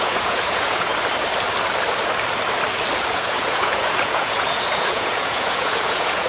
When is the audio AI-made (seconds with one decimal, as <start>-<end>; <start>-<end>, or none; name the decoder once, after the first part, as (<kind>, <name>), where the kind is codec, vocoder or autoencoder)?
0.0-0.9 (vocoder, Vocos); 3.1-6.3

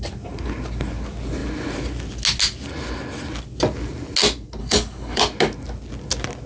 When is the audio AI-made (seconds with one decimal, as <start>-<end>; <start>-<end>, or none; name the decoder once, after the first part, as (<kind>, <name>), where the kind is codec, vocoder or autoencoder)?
4.6-5.2 (codec, HILCodec)

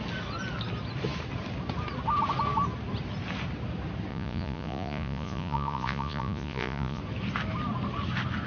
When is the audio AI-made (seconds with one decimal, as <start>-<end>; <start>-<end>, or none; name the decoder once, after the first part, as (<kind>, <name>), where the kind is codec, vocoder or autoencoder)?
4.1-7.0 (vocoder, Vocos)

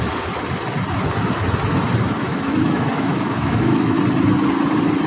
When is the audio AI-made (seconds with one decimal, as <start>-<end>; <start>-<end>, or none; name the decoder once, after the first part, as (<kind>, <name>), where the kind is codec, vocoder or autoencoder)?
2.3-4.0 (autoencoder, DAC-VAE)

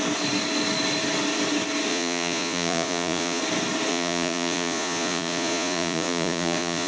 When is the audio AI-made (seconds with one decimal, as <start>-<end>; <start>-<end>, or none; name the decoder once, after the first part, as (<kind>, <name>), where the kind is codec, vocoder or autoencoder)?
1.9-3.4 (vocoder, Vocos); 3.9-6.9

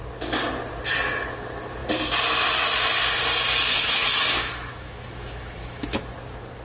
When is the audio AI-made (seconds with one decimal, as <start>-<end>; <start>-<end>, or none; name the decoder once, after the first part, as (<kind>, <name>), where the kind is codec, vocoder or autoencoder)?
3.7-6.0 (autoencoder, DAC-VAE)

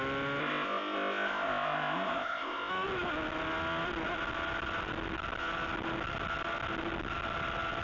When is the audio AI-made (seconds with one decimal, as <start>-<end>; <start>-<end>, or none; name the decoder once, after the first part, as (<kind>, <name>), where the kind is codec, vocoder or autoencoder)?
0.4-2.7 (codec, ZipCodec)

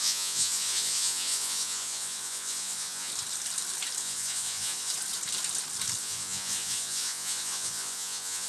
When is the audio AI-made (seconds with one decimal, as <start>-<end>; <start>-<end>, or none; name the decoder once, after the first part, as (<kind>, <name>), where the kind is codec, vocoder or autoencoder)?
0.0-3.1 (vocoder, Vocos); 4.0-4.9; 6.0-8.5